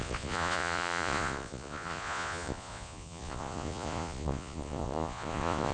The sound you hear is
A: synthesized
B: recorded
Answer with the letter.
A